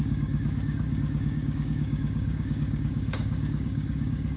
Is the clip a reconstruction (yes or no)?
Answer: yes